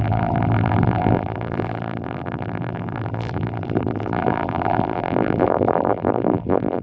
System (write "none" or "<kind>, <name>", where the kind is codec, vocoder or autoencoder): vocoder, BigVGAN v2